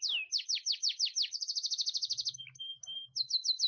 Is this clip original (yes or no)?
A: no